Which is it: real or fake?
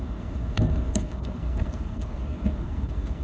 fake